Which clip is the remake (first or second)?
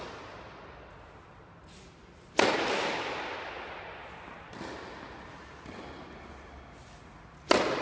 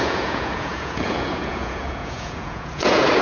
second